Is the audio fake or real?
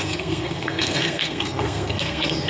fake